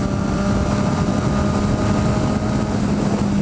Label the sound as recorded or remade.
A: recorded